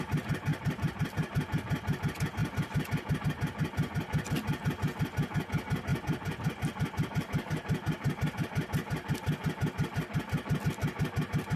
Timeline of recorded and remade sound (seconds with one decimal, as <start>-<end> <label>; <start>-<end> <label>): 0.0-0.5 recorded; 0.5-2.0 remade; 2.0-5.9 recorded; 5.9-10.6 remade; 10.6-11.6 recorded